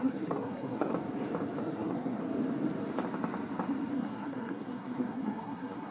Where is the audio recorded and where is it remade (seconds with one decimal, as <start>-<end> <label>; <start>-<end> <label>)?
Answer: 0.0-0.9 remade; 0.9-1.6 recorded; 1.6-2.2 remade; 2.2-3.9 recorded; 3.9-5.9 remade

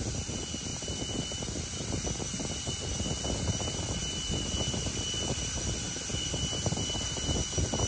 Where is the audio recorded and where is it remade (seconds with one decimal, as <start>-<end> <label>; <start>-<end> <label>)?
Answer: 0.0-7.9 recorded

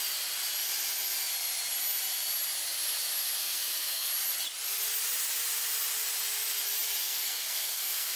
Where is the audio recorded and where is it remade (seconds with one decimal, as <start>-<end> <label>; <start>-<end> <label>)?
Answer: 0.0-3.4 recorded; 3.4-4.1 remade; 4.1-7.0 recorded; 7.0-8.2 remade